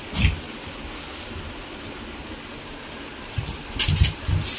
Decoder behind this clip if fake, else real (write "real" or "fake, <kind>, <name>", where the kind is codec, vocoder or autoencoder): real